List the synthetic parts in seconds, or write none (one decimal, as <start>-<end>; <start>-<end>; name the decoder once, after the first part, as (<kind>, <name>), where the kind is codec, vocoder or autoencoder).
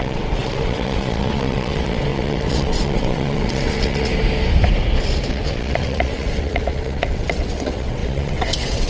0.0-4.1 (vocoder, WaveNeXt); 5.3-8.9